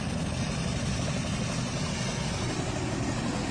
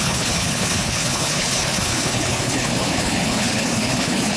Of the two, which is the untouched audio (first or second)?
first